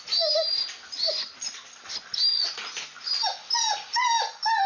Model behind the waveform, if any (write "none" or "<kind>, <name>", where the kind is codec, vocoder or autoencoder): none